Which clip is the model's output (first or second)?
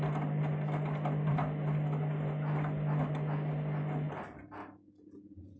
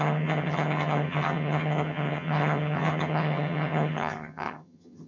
second